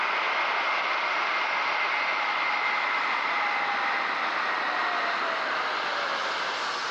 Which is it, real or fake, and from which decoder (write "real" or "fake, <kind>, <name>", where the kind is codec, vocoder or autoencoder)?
fake, vocoder, BigVGAN v2